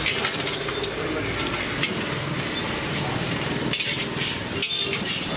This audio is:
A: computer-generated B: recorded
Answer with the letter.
B